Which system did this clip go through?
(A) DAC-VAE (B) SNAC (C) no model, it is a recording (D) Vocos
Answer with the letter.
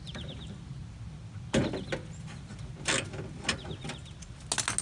C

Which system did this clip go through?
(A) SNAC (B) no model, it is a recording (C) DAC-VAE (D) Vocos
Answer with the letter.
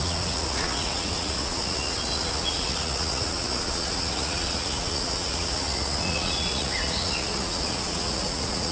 D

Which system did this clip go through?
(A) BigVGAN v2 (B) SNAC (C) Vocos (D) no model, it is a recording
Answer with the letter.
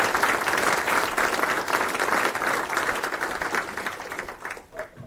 A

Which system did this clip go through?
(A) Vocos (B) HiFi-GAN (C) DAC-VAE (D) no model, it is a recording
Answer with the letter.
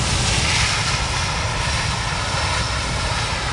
D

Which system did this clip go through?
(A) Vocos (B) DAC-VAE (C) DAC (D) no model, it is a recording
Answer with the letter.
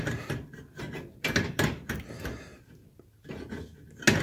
D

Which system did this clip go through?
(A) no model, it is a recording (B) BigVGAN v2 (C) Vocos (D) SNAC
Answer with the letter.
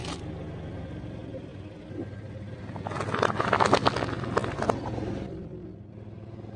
B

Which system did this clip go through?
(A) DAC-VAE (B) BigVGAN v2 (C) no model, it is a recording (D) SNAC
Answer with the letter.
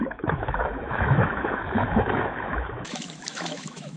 A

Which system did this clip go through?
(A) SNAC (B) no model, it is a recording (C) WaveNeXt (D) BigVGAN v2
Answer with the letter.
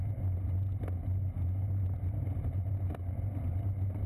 B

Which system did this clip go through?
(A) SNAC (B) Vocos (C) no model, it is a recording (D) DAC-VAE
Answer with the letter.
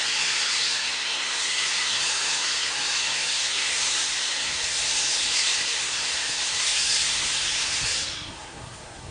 A